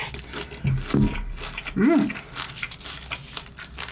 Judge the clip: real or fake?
real